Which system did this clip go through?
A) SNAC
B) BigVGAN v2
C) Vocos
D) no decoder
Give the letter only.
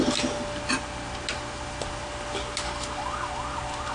D